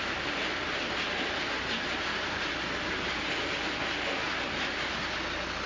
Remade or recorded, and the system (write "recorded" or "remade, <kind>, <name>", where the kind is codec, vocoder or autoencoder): recorded